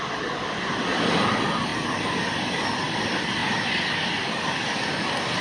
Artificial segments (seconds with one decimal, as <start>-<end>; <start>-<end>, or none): none